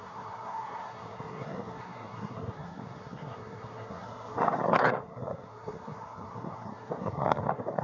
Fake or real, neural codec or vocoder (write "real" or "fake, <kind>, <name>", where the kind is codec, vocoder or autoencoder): fake, codec, SNAC